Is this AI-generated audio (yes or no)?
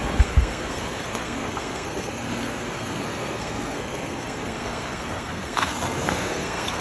yes